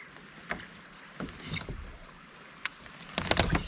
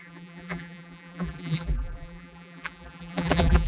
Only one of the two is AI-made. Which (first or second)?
second